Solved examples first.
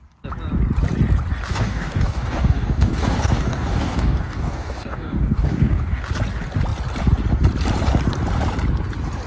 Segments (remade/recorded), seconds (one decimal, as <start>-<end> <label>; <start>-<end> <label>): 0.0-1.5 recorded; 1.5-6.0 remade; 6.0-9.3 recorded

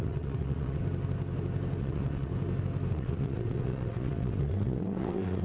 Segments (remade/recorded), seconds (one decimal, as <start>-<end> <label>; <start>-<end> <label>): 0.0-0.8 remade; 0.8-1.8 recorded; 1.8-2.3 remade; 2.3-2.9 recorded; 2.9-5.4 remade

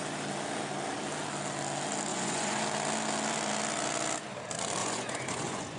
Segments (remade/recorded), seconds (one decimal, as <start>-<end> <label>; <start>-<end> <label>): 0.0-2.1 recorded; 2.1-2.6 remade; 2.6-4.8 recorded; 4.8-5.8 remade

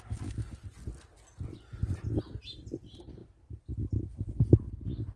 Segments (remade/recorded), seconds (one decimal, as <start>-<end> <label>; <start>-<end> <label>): 0.0-5.2 recorded

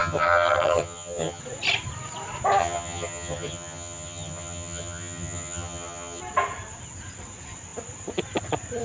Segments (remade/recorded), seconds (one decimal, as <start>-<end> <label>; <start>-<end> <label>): 0.0-1.4 remade; 1.4-2.6 recorded; 2.6-6.2 remade; 6.2-8.8 recorded

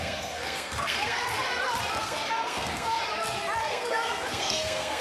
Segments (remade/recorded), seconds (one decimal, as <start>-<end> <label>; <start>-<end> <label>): 0.0-1.3 remade; 1.3-2.0 recorded; 2.0-3.0 remade; 3.0-3.7 recorded; 3.7-5.0 remade